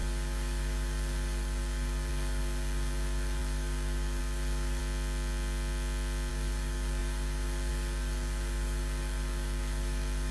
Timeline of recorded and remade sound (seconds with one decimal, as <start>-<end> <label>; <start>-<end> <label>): 0.0-4.8 remade; 4.8-6.3 recorded; 6.3-10.3 remade